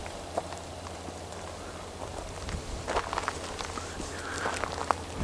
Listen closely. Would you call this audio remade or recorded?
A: recorded